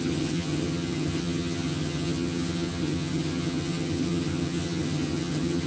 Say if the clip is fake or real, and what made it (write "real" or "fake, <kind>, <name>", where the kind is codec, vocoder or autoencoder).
fake, vocoder, HiFi-GAN